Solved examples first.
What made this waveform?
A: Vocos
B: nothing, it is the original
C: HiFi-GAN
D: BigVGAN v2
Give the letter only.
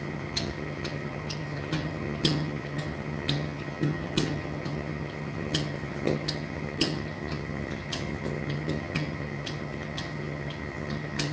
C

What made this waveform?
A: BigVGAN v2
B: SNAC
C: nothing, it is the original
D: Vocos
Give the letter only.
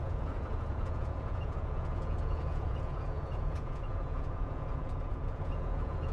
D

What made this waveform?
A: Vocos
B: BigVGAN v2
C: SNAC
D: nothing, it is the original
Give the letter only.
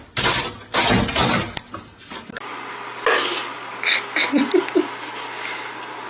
D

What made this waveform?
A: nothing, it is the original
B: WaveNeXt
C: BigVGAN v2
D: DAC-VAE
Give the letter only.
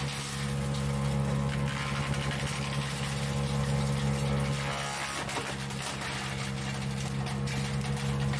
A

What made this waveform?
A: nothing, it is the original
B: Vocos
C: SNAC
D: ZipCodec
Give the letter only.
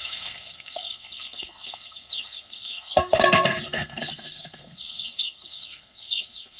C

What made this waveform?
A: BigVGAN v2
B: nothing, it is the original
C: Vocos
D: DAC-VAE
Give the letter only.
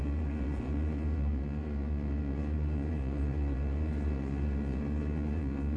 C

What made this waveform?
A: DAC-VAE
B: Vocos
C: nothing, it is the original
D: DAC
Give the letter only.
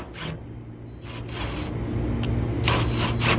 C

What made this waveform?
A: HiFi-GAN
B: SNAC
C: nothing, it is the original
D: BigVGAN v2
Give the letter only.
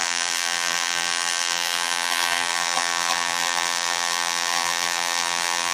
D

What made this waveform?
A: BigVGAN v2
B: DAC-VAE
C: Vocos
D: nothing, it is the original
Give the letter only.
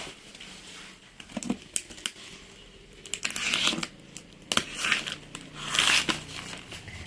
D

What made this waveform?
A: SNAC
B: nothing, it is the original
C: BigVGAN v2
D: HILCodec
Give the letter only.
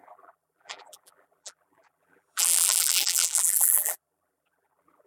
C